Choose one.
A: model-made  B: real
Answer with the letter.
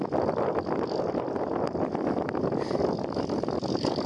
B